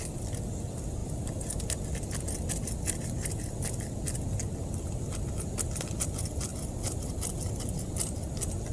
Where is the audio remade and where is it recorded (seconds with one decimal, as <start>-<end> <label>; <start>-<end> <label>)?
0.0-1.0 recorded; 1.0-1.6 remade; 1.6-6.5 recorded; 6.5-7.1 remade; 7.1-8.7 recorded